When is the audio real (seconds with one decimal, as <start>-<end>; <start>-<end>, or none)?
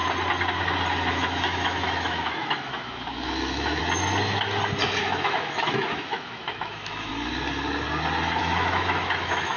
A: 0.0-1.1; 3.8-5.0; 7.1-8.4